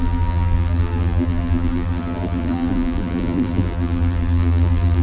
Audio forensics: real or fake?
fake